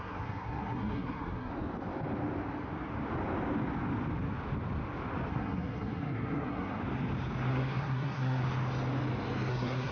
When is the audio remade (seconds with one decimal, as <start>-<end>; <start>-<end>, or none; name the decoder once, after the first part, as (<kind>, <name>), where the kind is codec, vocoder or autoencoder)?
0.0-1.5 (codec, SNAC); 5.3-6.8; 7.5-8.4; 9.5-9.9